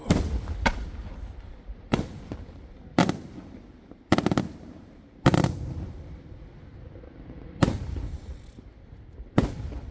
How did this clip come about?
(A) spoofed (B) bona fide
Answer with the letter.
A